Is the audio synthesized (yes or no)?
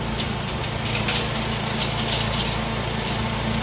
no